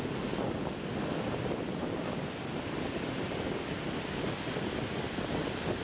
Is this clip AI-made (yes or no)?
no